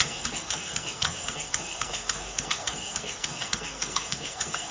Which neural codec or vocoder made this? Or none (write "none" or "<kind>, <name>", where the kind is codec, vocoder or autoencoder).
codec, SNAC